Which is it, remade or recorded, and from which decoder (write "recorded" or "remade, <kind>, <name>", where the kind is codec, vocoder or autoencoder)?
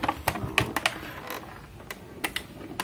recorded